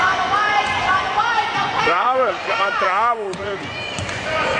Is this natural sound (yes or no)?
no